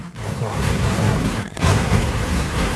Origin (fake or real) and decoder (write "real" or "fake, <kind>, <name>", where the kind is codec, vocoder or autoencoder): fake, codec, SNAC